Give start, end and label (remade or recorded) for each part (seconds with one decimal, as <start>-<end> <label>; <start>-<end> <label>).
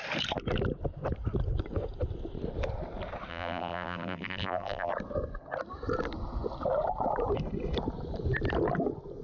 0.0-3.3 recorded; 3.3-4.9 remade; 4.9-9.2 recorded